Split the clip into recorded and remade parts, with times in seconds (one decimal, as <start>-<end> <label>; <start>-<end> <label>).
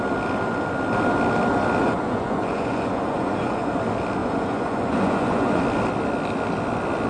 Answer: 0.0-1.8 recorded; 1.8-3.7 remade; 3.7-4.2 recorded; 4.2-5.6 remade; 5.6-7.1 recorded